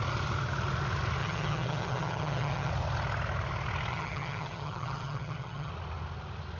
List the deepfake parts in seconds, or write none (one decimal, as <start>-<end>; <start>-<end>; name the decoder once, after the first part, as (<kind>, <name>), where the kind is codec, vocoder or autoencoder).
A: 1.2-2.7 (vocoder, HiFi-GAN); 3.9-5.7